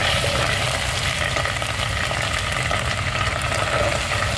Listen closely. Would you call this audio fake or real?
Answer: real